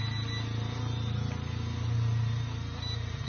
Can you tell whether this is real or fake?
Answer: real